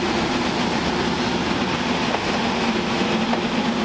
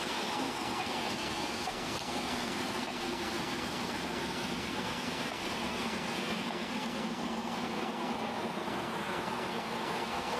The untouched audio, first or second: first